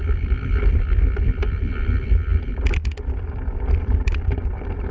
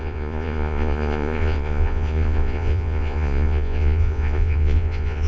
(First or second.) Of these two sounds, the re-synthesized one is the second